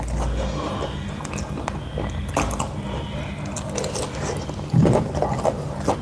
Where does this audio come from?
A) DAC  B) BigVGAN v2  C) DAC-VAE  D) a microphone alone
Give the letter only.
D